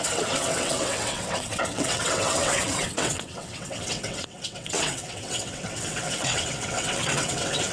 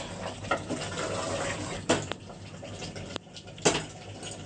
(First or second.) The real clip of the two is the second